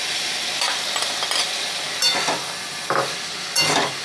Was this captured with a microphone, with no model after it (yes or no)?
yes